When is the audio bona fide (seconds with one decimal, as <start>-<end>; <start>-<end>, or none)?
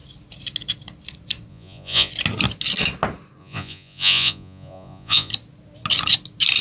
0.0-1.5; 2.1-3.4; 5.3-6.6